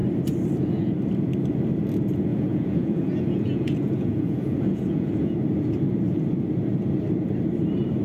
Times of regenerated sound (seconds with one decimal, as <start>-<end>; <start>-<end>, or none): 2.3-5.3